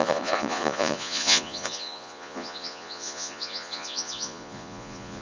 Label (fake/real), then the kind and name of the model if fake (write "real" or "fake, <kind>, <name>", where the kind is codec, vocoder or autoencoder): fake, vocoder, Vocos